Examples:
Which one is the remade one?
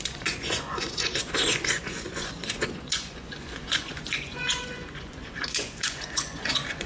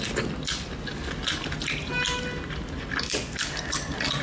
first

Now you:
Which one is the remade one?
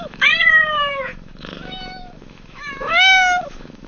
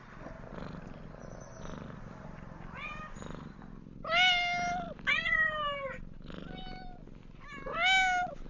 first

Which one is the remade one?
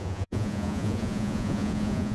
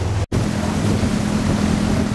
first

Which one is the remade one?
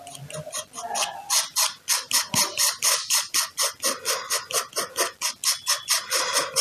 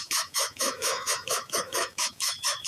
second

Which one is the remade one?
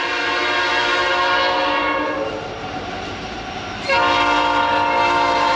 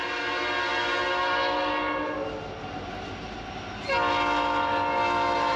first